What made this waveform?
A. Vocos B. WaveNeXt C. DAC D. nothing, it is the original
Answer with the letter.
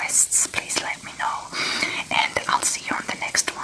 B